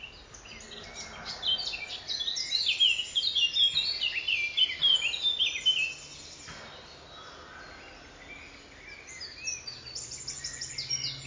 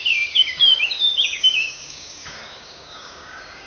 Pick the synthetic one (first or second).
second